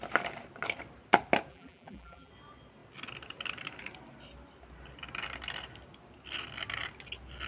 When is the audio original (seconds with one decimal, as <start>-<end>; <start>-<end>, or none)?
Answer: 0.0-1.5; 2.3-7.5